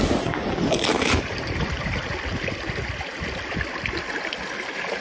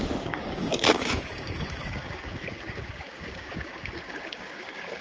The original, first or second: first